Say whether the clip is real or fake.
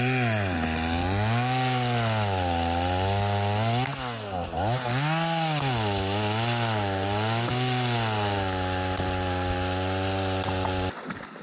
real